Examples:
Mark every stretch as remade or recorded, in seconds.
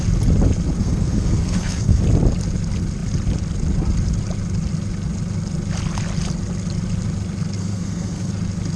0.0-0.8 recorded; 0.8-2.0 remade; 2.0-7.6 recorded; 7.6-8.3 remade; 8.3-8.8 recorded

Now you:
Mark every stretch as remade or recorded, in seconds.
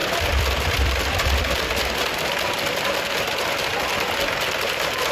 0.0-2.6 remade; 2.6-5.1 recorded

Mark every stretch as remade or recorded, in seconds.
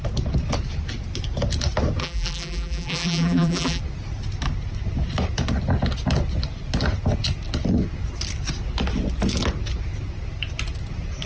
0.0-2.0 recorded; 2.0-3.8 remade; 3.8-11.3 recorded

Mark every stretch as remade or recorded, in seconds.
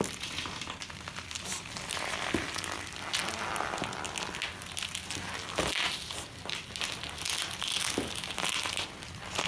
0.0-9.5 recorded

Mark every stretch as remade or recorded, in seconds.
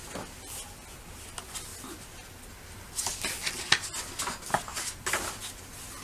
0.0-6.0 recorded